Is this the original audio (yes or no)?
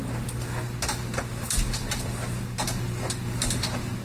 yes